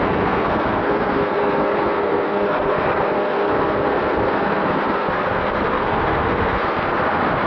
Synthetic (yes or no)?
yes